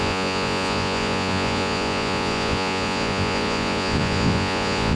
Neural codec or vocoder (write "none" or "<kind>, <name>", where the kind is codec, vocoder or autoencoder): vocoder, Vocos